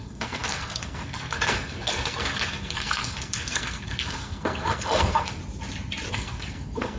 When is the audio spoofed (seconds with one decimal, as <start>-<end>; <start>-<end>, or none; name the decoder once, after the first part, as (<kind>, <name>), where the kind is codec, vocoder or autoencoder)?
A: 0.0-5.4 (codec, SNAC); 6.1-7.0